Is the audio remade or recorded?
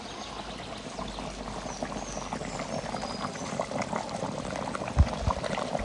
recorded